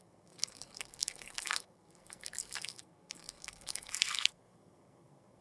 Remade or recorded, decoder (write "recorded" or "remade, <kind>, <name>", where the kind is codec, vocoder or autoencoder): remade, codec, SNAC